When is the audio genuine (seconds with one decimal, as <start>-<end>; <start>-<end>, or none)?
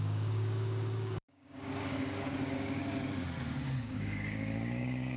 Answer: 2.8-3.8